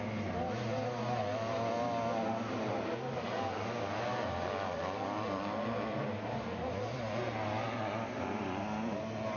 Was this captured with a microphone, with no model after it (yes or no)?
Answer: yes